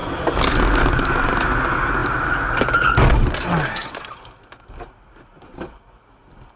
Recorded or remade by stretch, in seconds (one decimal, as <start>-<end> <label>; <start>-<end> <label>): 0.0-3.8 recorded; 3.8-4.4 remade; 4.4-6.6 recorded